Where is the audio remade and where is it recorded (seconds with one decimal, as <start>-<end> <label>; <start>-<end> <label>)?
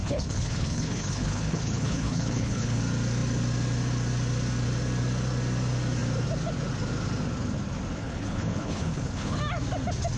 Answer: 0.0-2.8 remade; 2.8-8.0 recorded; 8.0-9.4 remade; 9.4-10.2 recorded